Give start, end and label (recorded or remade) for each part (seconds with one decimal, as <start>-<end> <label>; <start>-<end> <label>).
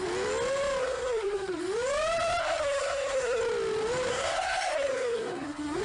0.0-0.8 recorded; 0.8-1.6 remade; 1.6-2.4 recorded; 2.4-3.4 remade; 3.4-4.1 recorded; 4.1-5.8 remade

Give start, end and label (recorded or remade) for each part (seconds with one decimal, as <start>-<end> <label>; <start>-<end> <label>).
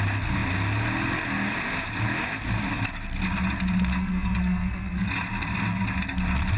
0.0-4.0 recorded; 4.0-5.1 remade; 5.1-6.6 recorded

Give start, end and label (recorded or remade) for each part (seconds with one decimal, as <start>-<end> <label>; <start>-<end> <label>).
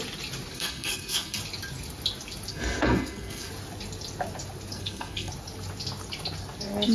0.0-0.5 recorded; 0.5-1.4 remade; 1.4-2.5 recorded; 2.5-3.5 remade; 3.5-4.7 recorded; 4.7-5.3 remade; 5.3-6.9 recorded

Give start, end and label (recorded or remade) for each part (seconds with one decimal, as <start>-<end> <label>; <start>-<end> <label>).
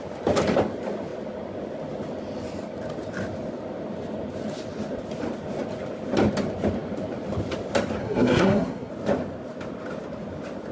0.0-8.0 recorded; 8.0-8.9 remade; 8.9-10.7 recorded